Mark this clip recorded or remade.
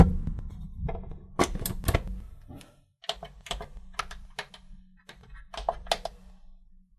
recorded